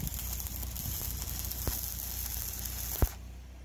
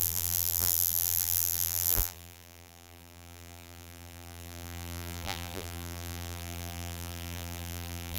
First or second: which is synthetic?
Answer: second